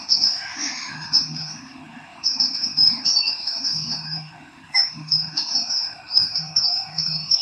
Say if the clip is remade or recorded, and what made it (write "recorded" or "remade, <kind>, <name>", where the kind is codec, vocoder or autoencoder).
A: remade, autoencoder, DAC-VAE